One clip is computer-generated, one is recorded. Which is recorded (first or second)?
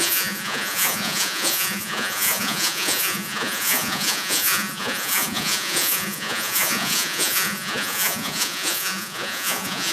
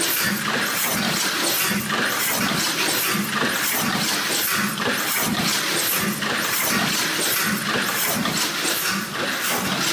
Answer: second